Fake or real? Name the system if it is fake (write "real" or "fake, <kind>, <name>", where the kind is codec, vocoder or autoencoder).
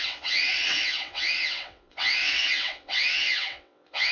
fake, vocoder, WaveNeXt